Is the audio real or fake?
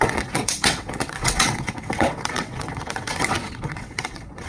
fake